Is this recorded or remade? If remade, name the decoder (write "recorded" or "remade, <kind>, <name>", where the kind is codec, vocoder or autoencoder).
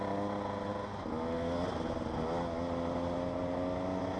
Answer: recorded